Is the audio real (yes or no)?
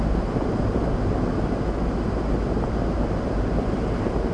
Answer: yes